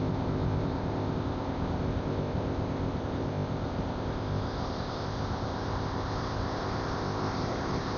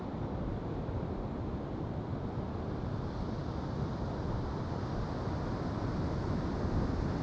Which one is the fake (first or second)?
first